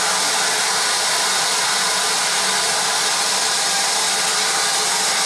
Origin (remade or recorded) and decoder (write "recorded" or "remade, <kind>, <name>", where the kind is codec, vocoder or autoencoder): recorded